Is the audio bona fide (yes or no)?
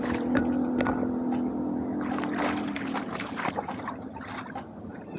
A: yes